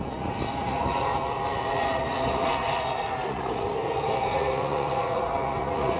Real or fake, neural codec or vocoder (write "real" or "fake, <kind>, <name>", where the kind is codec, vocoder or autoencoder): fake, vocoder, Vocos